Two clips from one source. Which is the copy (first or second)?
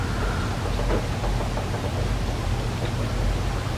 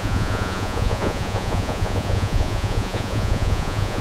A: second